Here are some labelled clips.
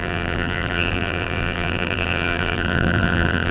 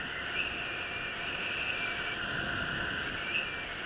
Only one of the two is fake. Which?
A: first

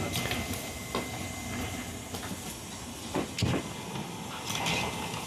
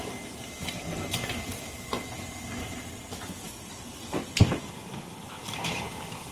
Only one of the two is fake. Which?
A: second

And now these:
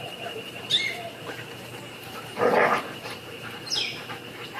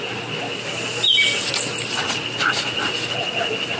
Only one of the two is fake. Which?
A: first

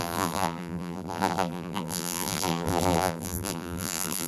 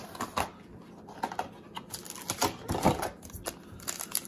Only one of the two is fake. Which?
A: first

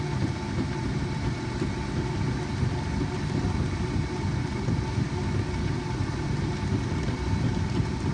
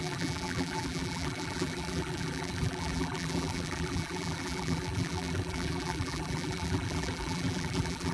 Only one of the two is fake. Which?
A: second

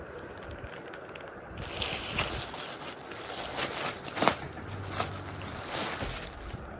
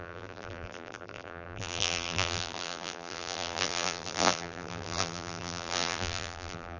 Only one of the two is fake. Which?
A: second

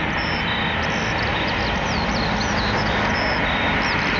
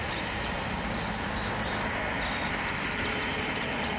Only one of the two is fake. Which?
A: second